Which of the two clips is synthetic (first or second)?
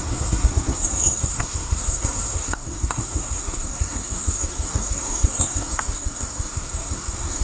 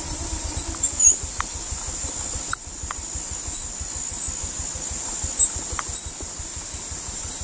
first